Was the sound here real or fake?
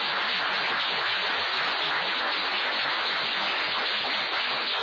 fake